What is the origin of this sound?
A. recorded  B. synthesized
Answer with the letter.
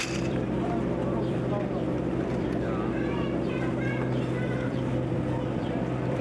B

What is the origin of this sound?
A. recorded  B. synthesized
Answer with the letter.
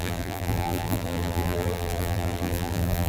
B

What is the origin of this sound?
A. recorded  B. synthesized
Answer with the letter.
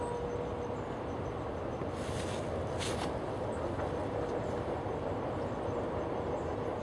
A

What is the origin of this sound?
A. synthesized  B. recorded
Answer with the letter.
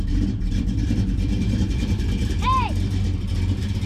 A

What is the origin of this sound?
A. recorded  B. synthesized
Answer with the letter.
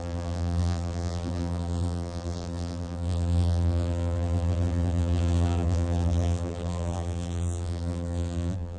B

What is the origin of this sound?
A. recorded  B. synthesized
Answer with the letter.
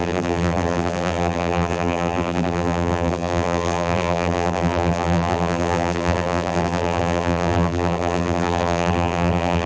B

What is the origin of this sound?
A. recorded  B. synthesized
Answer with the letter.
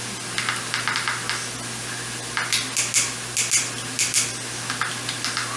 A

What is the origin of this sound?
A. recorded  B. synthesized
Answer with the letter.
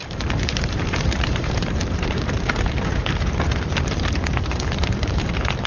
B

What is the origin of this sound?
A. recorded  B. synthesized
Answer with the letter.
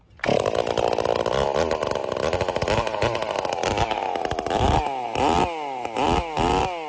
A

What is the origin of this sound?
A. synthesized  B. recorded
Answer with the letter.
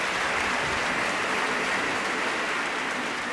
A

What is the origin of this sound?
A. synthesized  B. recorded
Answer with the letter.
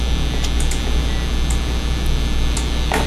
B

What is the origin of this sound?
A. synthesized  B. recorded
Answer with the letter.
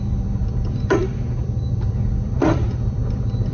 A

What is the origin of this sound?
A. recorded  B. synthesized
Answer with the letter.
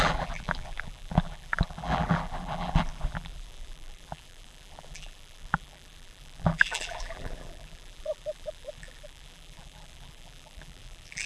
B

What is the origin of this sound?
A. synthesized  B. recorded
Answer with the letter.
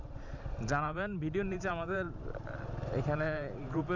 A